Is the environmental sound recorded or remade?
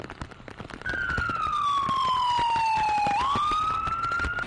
recorded